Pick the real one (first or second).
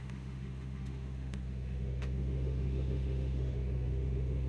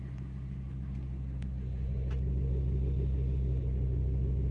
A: second